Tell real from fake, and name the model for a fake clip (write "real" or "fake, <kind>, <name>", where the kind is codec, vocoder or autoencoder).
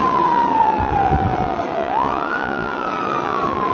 fake, vocoder, WaveNeXt